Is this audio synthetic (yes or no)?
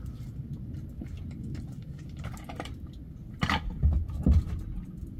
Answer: no